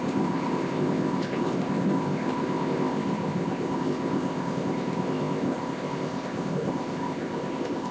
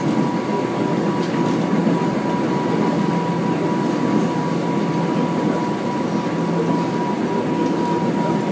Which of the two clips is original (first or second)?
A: second